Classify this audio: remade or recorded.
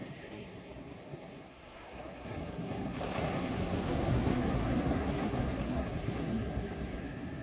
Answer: remade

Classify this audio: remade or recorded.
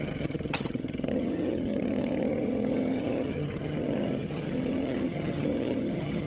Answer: remade